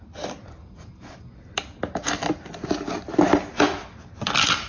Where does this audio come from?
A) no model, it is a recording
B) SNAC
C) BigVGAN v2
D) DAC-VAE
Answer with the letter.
A